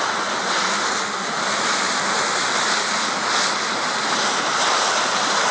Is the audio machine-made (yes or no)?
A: no